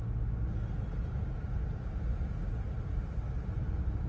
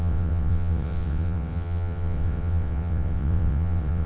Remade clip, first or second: second